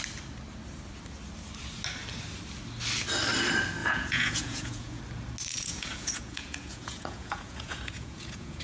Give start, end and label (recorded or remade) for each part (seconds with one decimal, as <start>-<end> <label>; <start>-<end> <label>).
0.0-3.8 recorded; 3.8-5.0 remade; 5.0-5.5 recorded; 5.5-8.6 remade